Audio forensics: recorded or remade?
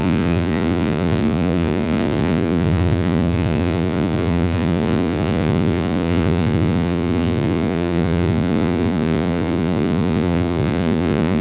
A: remade